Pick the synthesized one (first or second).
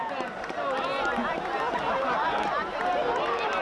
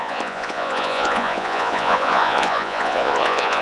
second